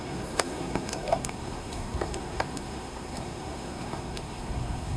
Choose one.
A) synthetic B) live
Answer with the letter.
A